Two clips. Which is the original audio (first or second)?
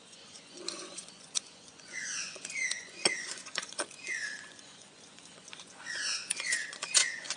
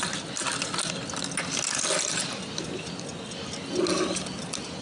second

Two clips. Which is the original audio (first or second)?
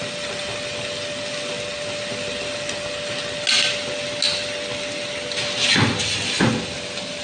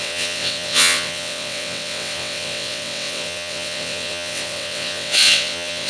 first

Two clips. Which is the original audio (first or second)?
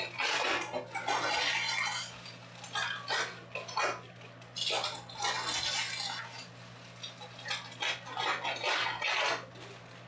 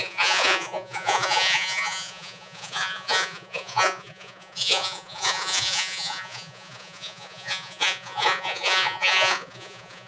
first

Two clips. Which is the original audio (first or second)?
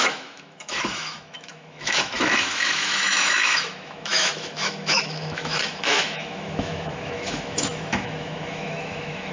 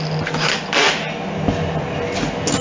second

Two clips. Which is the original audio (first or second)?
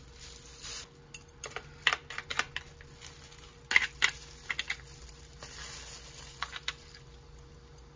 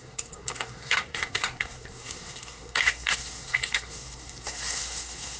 first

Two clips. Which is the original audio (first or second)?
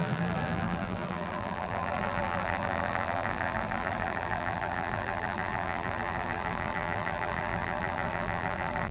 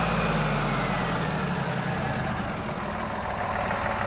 second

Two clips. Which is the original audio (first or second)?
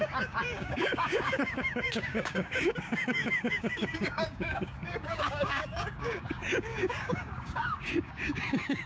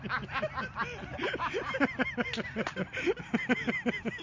second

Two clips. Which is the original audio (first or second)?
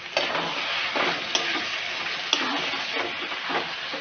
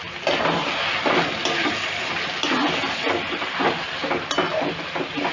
first